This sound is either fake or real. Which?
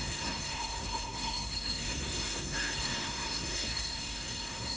fake